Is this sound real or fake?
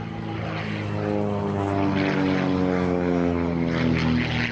real